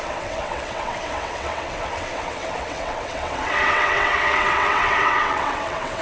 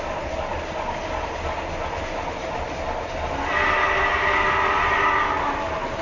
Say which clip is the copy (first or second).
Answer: first